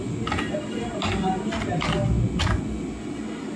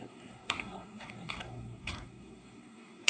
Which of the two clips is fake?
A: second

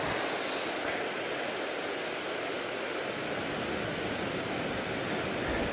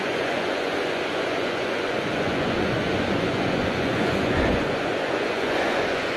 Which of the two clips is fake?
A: second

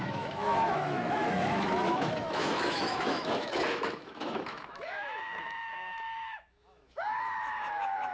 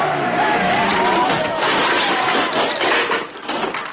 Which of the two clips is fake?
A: first